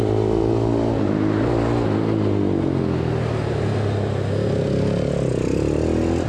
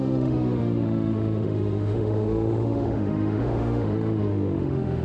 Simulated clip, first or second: second